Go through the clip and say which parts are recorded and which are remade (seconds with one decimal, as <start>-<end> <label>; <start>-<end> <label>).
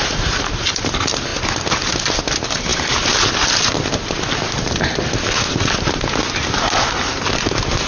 0.0-7.9 recorded